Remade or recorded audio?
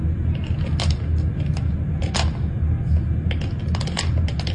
recorded